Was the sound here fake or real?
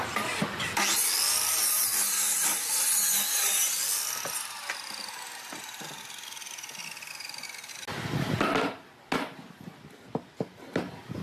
real